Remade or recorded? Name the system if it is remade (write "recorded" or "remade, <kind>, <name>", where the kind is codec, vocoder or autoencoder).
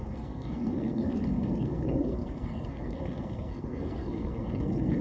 remade, codec, SNAC